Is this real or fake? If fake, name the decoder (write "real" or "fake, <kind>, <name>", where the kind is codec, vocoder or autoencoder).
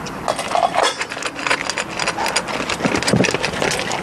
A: real